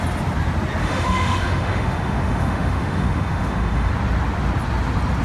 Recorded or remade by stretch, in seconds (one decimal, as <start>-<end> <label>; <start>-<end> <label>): 0.0-0.8 recorded; 0.8-3.9 remade; 3.9-5.2 recorded